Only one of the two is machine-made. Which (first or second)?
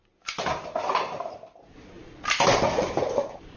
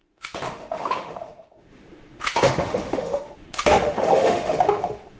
second